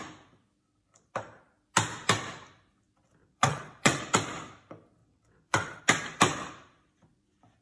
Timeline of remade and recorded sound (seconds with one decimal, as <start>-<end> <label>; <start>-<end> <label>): 0.0-3.2 recorded; 3.2-4.0 remade; 4.0-5.0 recorded; 5.0-5.8 remade; 5.8-7.6 recorded

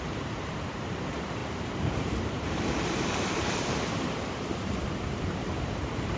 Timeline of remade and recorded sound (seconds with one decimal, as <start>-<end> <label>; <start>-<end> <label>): 0.0-6.2 remade